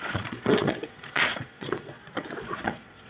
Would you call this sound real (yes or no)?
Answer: no